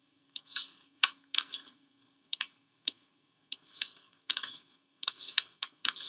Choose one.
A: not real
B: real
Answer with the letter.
A